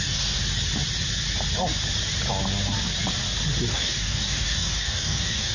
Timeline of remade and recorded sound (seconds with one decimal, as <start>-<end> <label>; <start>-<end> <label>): 0.0-0.4 remade; 0.4-3.7 recorded; 3.7-5.5 remade